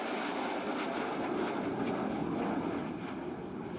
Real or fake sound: real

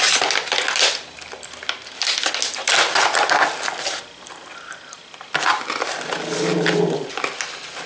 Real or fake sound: real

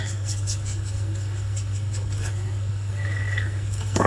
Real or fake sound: fake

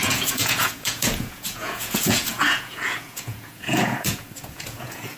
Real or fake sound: fake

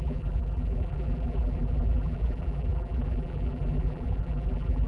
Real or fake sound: fake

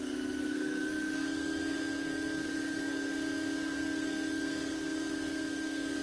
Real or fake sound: fake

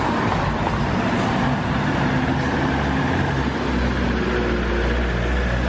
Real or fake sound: real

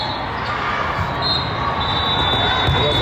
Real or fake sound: real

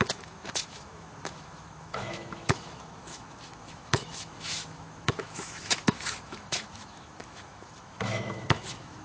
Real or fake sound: fake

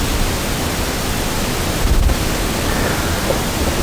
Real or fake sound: real